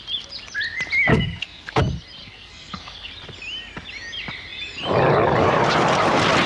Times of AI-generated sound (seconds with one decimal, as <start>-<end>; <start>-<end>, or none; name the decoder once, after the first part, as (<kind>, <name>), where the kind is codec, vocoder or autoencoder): 1.1-1.8 (codec, SNAC); 2.2-3.1